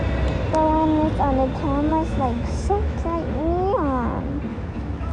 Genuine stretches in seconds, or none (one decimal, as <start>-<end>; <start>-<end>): 0.0-1.9; 3.4-4.5